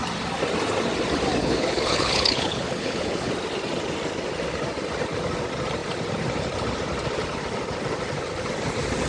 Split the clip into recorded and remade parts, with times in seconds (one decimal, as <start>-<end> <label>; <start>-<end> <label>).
0.0-1.4 recorded; 1.4-3.3 remade; 3.3-9.1 recorded